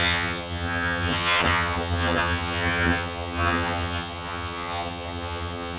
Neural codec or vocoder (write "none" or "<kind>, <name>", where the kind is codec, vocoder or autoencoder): vocoder, HiFi-GAN